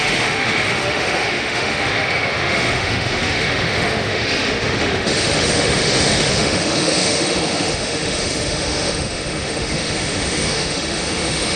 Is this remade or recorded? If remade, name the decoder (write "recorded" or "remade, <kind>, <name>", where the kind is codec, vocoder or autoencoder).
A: remade, autoencoder, DAC-VAE